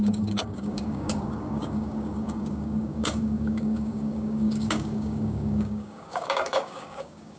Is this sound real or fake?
fake